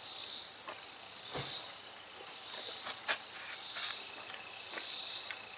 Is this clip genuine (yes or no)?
yes